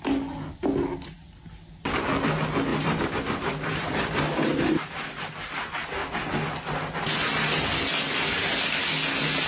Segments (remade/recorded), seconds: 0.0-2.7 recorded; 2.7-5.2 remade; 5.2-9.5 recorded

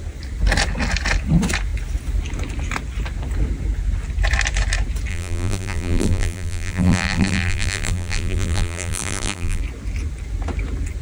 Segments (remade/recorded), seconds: 0.0-5.1 recorded; 5.1-9.6 remade; 9.6-11.0 recorded

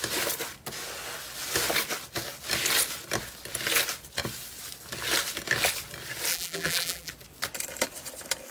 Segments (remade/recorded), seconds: 0.0-6.3 recorded; 6.3-7.1 remade; 7.1-8.5 recorded